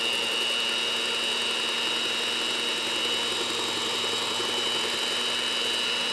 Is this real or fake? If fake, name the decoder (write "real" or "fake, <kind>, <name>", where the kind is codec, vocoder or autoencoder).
real